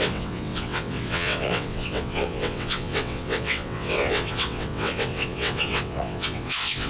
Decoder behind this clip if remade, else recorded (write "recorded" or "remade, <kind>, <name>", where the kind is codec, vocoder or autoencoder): remade, vocoder, WaveNeXt